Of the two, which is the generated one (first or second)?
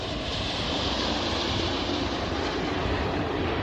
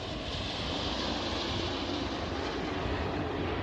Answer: first